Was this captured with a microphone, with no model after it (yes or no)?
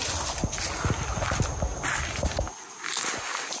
yes